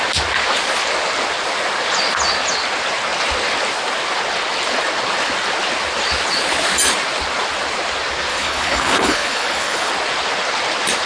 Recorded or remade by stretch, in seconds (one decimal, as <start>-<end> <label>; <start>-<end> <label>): 0.0-8.3 recorded; 8.3-9.9 remade; 9.9-11.1 recorded